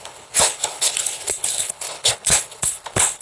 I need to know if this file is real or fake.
fake